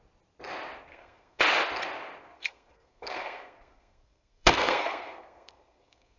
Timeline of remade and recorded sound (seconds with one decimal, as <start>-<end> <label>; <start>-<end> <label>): 0.0-0.9 recorded; 0.9-1.4 remade; 1.4-2.3 recorded; 2.3-6.2 remade